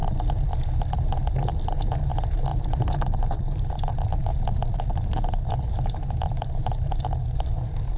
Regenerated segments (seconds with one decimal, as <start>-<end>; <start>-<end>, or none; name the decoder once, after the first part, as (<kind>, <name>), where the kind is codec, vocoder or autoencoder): 2.1-8.0 (vocoder, BigVGAN v2)

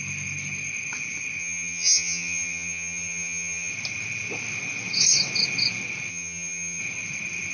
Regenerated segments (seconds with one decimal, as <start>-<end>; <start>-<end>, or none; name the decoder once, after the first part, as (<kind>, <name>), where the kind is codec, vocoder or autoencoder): 1.4-3.7 (vocoder, HiFi-GAN); 6.1-6.8

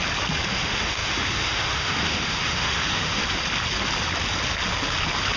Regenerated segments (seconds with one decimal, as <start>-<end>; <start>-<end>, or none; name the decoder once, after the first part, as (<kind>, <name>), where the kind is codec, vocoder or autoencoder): 0.5-3.2 (autoencoder, DAC-VAE)

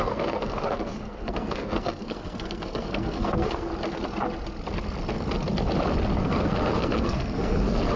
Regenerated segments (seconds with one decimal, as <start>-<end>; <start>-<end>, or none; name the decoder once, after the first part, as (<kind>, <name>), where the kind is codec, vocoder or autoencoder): 0.0-3.7 (codec, SNAC); 6.2-8.0

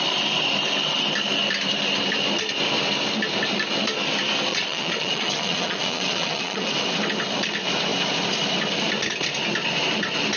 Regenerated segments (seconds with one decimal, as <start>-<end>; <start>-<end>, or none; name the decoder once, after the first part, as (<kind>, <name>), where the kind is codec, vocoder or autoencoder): 4.5-6.7 (vocoder, Vocos)

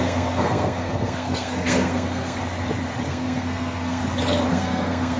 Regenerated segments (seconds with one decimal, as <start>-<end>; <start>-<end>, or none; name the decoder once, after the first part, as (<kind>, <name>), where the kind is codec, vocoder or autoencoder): 0.0-2.4 (codec, SNAC); 3.1-4.0; 4.5-5.2

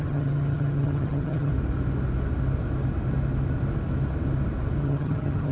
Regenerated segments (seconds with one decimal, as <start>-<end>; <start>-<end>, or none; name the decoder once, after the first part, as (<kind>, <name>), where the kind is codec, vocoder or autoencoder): 0.0-1.5 (vocoder, HiFi-GAN); 4.8-5.5